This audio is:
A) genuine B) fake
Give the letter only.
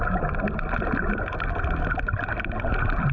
A